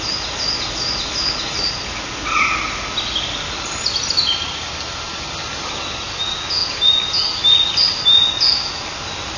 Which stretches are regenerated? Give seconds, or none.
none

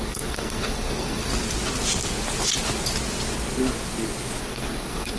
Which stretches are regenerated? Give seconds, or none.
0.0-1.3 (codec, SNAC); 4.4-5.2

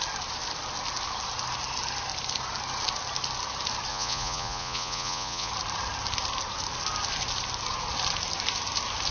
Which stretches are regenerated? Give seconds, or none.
3.9-5.5 (vocoder, Vocos)

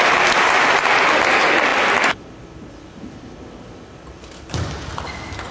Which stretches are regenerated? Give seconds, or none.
none

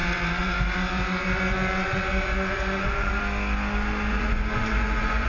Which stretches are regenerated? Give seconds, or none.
0.0-3.2 (vocoder, Vocos); 4.1-5.3